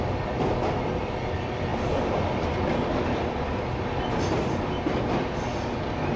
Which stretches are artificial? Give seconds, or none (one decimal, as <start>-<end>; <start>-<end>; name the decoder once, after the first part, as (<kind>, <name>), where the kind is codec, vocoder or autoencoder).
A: none